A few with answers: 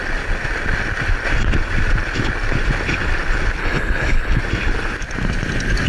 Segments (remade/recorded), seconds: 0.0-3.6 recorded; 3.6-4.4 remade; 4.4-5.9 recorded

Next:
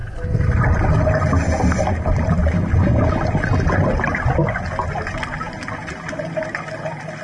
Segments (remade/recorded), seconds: 0.0-7.2 recorded

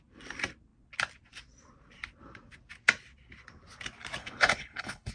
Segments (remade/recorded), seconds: 0.0-4.2 recorded; 4.2-5.1 remade

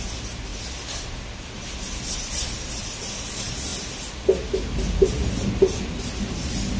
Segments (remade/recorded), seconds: 0.0-6.8 recorded

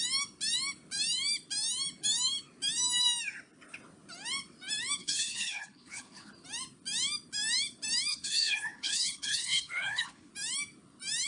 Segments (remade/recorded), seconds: 0.0-5.0 recorded; 5.0-6.3 remade; 6.3-8.1 recorded; 8.1-10.3 remade; 10.3-11.3 recorded